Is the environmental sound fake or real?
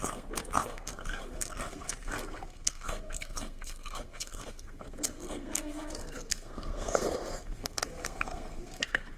fake